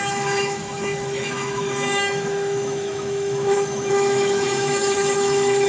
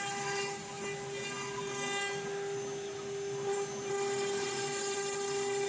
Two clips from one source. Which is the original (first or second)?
second